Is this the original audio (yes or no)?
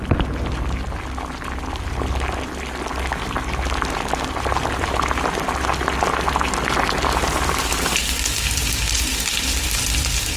yes